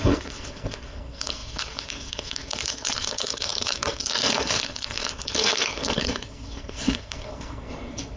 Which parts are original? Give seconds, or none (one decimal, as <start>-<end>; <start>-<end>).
none